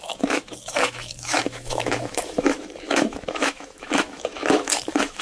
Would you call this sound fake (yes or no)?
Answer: yes